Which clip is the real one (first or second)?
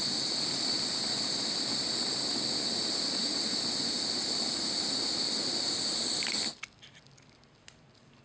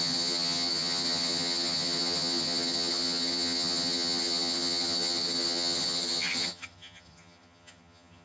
first